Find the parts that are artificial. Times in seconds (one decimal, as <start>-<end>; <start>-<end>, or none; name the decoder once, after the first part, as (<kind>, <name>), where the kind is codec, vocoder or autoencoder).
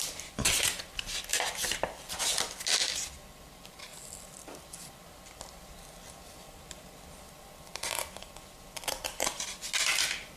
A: 1.3-2.2 (vocoder, BigVGAN v2)